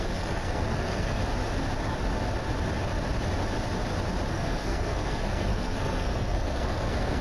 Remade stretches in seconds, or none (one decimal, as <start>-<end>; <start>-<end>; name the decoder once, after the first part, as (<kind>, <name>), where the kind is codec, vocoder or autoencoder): 0.0-1.2 (codec, SNAC); 4.3-7.2